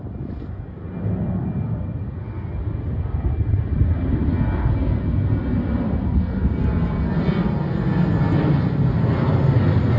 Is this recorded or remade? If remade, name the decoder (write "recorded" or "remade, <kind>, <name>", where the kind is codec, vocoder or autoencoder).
recorded